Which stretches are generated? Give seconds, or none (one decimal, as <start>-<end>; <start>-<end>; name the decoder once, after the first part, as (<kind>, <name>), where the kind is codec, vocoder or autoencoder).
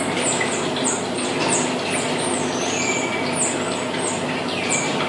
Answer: 0.0-3.1 (vocoder, BigVGAN v2); 4.4-5.1